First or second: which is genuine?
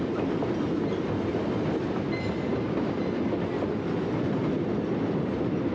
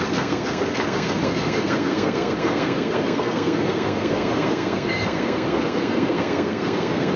first